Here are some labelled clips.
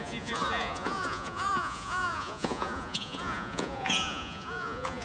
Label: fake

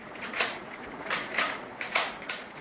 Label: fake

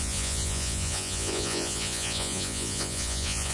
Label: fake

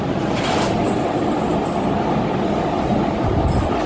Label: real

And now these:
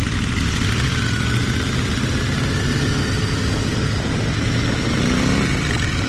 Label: real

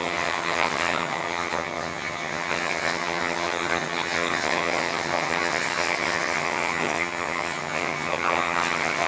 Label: fake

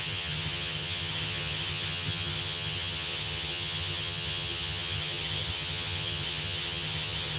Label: fake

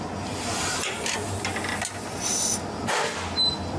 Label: real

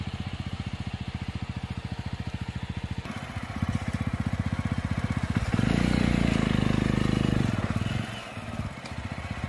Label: real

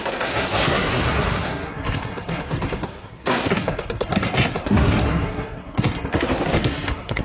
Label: fake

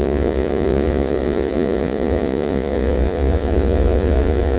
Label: fake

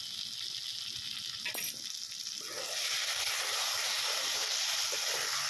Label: real